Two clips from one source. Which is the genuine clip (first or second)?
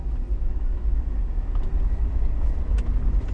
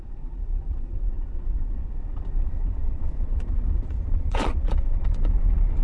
first